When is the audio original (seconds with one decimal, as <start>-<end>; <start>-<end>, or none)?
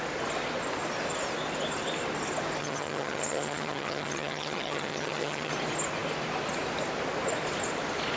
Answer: 0.0-2.6; 5.5-8.2